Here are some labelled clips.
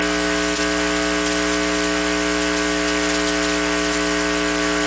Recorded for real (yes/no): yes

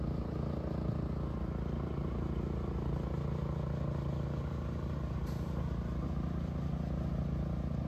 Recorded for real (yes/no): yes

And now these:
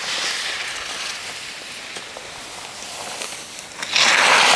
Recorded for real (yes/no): yes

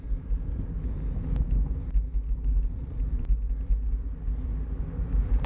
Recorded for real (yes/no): yes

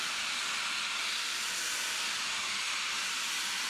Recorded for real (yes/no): no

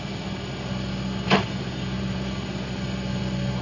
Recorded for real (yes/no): yes